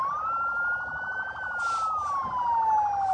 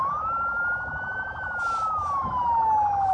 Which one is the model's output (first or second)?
second